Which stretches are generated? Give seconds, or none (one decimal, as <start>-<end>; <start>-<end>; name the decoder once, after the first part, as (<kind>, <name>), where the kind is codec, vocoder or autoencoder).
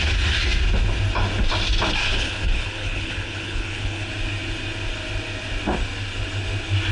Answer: 2.1-4.1 (codec, HILCodec)